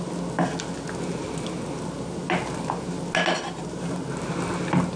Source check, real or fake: real